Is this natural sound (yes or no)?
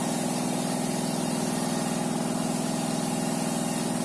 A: yes